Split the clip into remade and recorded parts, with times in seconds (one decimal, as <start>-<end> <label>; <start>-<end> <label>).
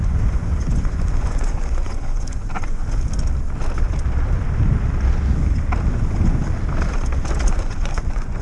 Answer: 0.0-2.8 remade; 2.8-5.9 recorded; 5.9-6.4 remade; 6.4-7.5 recorded; 7.5-8.4 remade